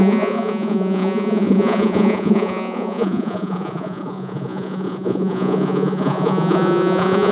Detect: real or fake fake